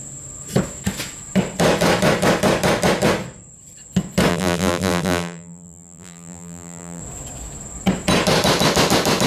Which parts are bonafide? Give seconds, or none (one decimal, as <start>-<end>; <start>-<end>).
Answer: 0.0-4.3; 7.0-9.3